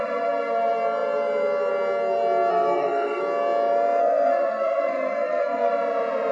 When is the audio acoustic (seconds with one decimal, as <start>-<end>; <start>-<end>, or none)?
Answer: 0.0-2.5; 3.2-4.0; 5.7-6.3